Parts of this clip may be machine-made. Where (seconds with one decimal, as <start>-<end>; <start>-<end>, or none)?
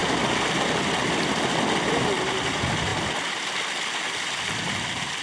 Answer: none